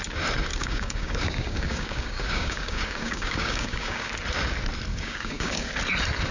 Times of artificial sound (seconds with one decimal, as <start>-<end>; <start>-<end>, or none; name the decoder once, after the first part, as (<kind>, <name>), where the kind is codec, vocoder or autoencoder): 0.5-4.1 (codec, DAC); 4.9-5.7

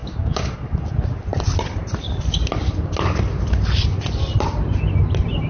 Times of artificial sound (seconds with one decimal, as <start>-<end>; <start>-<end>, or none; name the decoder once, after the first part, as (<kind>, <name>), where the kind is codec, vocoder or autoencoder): 0.0-0.5 (codec, DAC)

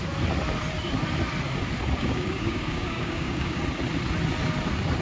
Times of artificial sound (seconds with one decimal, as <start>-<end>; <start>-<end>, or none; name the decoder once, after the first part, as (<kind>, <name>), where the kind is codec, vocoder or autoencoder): 2.0-3.6 (codec, DAC)

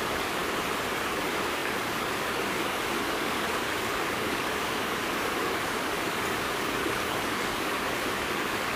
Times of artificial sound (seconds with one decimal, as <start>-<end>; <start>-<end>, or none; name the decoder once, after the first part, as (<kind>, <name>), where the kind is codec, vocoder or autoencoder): 0.0-0.4 (codec, DAC); 0.9-8.8

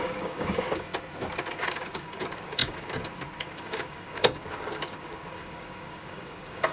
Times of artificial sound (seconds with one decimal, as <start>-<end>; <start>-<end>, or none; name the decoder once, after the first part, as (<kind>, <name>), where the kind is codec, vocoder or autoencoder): 0.0-0.9 (codec, DAC); 1.5-6.7

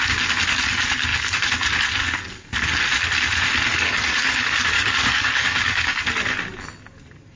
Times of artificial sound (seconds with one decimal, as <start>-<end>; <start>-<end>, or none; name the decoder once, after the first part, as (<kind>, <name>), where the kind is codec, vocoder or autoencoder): 3.7-6.0 (codec, DAC)

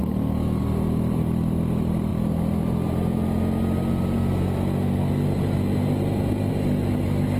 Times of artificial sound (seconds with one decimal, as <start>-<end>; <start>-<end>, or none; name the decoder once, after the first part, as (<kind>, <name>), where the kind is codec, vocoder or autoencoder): 0.0-0.6 (codec, DAC)

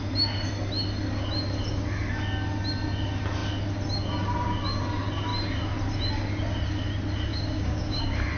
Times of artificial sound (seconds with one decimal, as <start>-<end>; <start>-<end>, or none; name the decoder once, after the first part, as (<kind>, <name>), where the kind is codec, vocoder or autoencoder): 7.3-8.0 (codec, DAC)